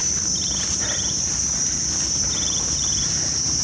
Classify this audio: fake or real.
fake